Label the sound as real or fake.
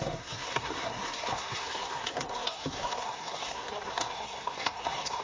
fake